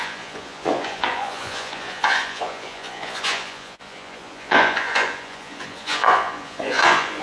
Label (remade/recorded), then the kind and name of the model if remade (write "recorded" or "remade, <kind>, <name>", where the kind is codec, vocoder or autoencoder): remade, vocoder, Vocos